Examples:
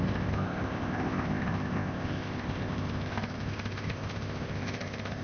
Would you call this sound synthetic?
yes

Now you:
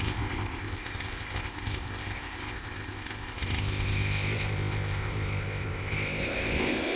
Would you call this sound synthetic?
yes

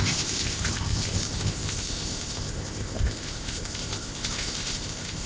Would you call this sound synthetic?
yes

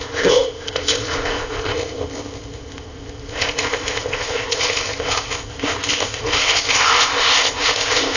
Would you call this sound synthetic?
yes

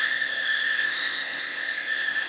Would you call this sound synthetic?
yes